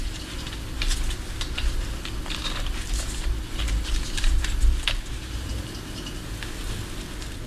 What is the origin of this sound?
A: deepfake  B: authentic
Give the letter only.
B